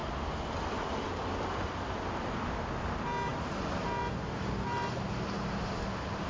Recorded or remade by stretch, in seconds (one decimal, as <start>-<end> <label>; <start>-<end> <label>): 0.0-6.3 recorded

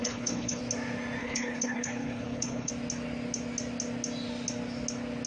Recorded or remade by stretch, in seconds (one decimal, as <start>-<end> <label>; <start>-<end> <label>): 0.0-0.6 remade; 0.6-1.2 recorded; 1.2-2.7 remade; 2.7-5.3 recorded

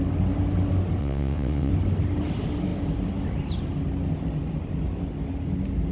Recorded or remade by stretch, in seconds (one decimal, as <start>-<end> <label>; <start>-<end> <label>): 0.0-1.0 recorded; 1.0-1.7 remade; 1.7-5.9 recorded

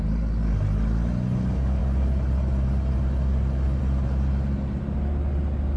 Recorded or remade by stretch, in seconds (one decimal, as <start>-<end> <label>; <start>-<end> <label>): 0.0-5.8 recorded

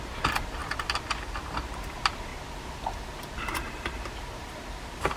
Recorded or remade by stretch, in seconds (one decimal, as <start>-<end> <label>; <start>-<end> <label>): 0.0-5.2 recorded